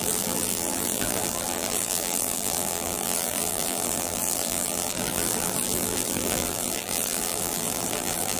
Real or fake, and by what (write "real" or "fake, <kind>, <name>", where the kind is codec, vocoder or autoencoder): fake, vocoder, BigVGAN v2